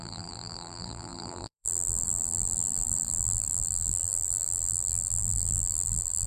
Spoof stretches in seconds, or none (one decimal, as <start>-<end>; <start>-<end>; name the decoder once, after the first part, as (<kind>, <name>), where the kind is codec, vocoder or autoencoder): 0.0-6.3 (vocoder, BigVGAN v2)